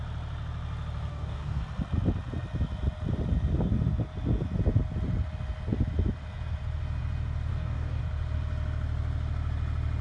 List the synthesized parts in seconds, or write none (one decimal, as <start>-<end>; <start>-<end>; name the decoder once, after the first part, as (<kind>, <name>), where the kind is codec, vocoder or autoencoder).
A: 1.1-1.6 (codec, DAC); 7.5-8.0